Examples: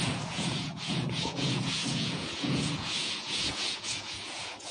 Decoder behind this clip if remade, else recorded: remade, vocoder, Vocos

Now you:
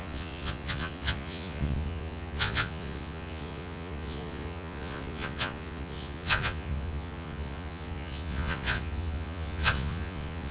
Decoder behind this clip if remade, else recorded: remade, vocoder, Vocos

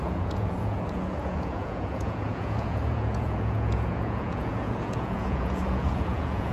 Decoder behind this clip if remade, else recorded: remade, vocoder, Vocos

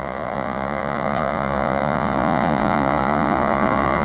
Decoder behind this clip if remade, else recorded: remade, vocoder, Vocos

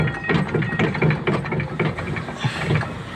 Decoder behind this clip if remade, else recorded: recorded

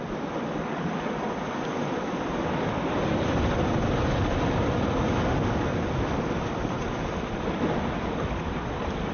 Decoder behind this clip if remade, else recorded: recorded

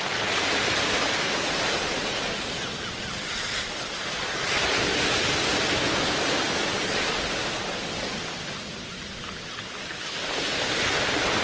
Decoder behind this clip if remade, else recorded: recorded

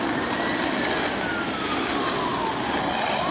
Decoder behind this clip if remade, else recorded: recorded